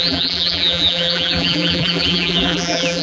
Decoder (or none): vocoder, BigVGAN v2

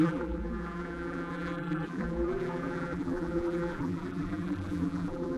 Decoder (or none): vocoder, BigVGAN v2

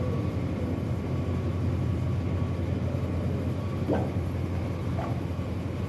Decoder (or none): none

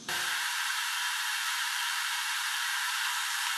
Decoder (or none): vocoder, BigVGAN v2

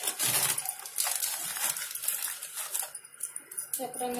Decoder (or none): none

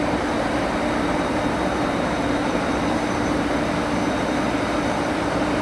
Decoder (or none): vocoder, BigVGAN v2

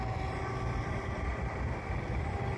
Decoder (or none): none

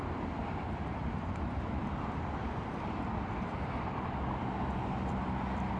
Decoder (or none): vocoder, BigVGAN v2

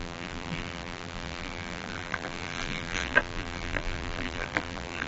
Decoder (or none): vocoder, BigVGAN v2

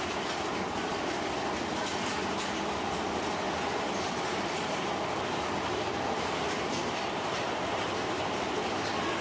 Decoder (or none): vocoder, BigVGAN v2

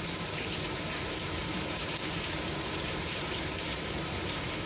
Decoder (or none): vocoder, BigVGAN v2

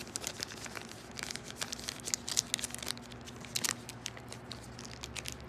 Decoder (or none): none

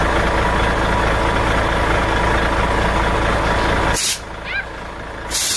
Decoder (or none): none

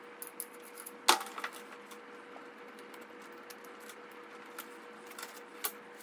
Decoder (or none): none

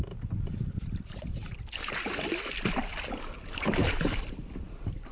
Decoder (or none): vocoder, BigVGAN v2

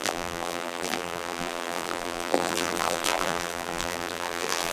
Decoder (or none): vocoder, BigVGAN v2